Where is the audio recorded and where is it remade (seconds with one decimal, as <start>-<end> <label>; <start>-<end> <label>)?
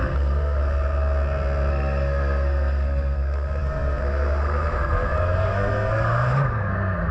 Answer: 0.0-0.6 remade; 0.6-1.7 recorded; 1.7-7.1 remade